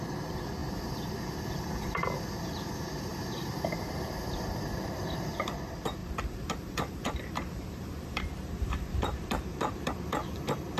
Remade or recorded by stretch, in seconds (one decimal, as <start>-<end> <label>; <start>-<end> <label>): 0.0-0.6 recorded; 0.6-1.3 remade; 1.3-3.1 recorded; 3.1-5.3 remade; 5.3-6.0 recorded; 6.0-10.1 remade; 10.1-10.8 recorded